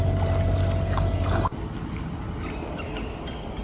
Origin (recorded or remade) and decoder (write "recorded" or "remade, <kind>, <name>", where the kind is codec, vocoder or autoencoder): recorded